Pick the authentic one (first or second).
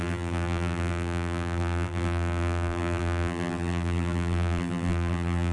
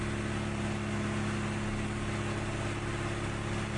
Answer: second